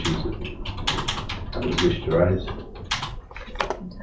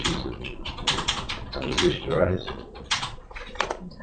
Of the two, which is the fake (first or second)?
second